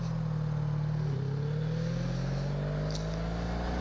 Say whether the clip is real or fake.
real